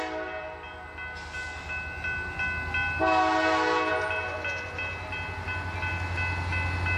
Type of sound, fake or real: real